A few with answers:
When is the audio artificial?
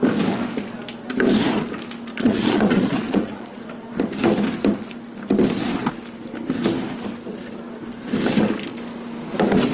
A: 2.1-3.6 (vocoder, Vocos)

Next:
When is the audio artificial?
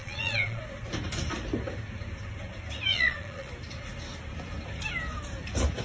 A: 0.0-0.6 (vocoder, Vocos); 2.9-3.5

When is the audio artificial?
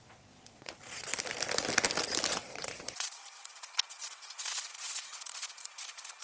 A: 0.0-1.1 (vocoder, Vocos); 2.3-6.2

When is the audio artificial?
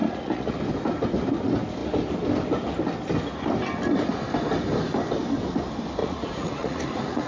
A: 0.0-0.6 (vocoder, Vocos); 6.0-7.3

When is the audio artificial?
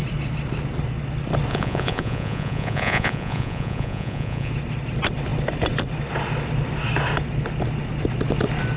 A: 1.5-4.5 (vocoder, Vocos)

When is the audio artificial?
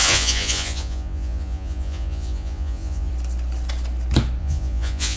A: 0.0-3.1 (vocoder, Vocos); 4.4-5.2